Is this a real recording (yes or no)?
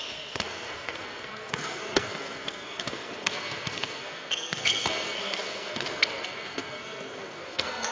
no